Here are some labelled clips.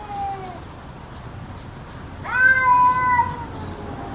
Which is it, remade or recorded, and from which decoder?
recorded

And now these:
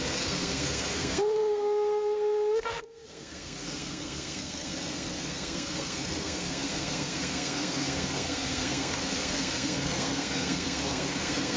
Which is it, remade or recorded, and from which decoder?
remade, codec, SNAC